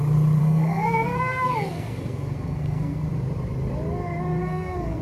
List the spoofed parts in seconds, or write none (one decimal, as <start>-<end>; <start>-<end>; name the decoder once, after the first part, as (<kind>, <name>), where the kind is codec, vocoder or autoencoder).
0.4-3.1 (codec, SNAC); 4.4-5.0